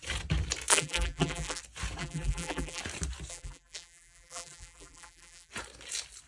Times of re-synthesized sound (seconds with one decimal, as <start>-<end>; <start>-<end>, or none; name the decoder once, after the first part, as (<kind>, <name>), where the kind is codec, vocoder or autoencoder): 0.7-1.6 (vocoder, BigVGAN v2); 2.0-2.8; 3.3-5.5

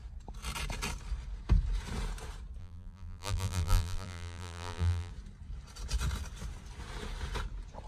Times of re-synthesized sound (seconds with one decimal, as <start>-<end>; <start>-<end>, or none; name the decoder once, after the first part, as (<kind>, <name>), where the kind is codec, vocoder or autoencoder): 2.6-5.1 (vocoder, BigVGAN v2)

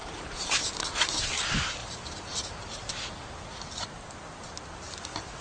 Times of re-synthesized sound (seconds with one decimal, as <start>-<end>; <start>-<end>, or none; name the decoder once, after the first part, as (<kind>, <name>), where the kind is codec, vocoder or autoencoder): 0.0-0.8 (vocoder, BigVGAN v2); 1.8-3.1